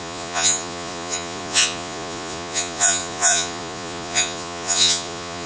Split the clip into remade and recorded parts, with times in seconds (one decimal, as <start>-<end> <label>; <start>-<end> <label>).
0.0-5.5 remade